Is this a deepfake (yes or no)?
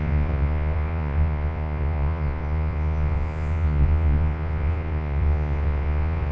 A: yes